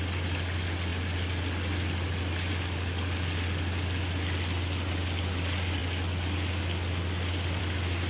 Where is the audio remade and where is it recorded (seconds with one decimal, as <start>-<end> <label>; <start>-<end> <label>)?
0.0-8.1 recorded